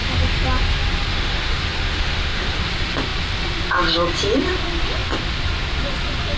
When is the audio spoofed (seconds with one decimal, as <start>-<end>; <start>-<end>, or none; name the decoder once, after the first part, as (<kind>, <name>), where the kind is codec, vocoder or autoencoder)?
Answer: 1.1-2.7 (autoencoder, DAC-VAE)